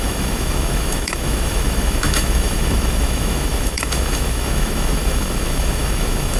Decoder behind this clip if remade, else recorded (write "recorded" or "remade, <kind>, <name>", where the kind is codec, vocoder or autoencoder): remade, autoencoder, DAC-VAE